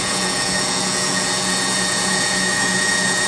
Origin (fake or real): fake